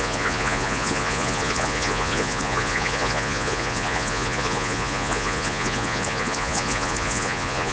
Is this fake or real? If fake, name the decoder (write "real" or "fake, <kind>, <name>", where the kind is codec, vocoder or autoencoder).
fake, vocoder, Vocos